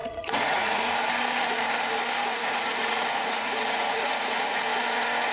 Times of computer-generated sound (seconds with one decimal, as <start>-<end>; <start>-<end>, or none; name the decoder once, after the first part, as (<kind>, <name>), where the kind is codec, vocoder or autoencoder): 0.0-0.9 (vocoder, Vocos); 2.3-4.6